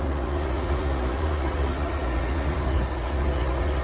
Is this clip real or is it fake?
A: fake